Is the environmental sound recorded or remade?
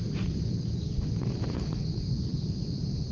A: recorded